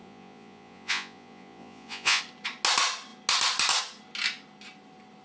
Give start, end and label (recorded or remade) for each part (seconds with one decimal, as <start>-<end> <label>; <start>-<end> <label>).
0.0-2.2 remade; 2.2-5.2 recorded